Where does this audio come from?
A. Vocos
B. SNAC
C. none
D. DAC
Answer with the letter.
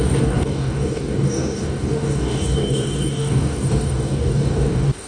D